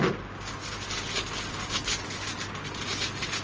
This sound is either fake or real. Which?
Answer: real